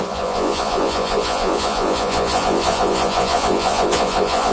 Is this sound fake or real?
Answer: fake